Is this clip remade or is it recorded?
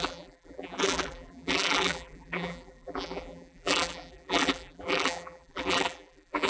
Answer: remade